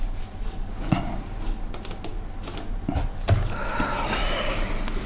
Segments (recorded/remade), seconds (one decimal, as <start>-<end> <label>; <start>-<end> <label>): 0.0-5.1 recorded